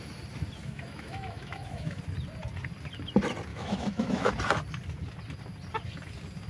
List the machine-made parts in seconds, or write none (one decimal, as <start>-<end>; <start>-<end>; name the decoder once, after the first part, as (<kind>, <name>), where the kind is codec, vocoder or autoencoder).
0.6-2.0 (autoencoder, DAC-VAE); 3.5-4.3